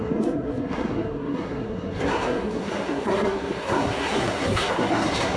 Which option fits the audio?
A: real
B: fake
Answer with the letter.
B